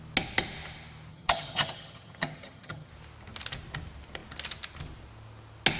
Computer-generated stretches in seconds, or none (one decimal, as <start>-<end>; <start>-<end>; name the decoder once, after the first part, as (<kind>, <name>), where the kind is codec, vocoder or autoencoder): 1.1-2.9 (vocoder, HiFi-GAN)